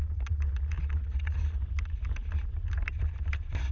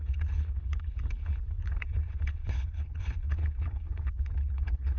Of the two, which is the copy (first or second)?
second